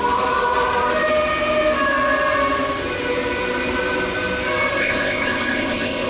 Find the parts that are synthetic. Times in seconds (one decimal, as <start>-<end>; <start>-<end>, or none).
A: 4.8-6.1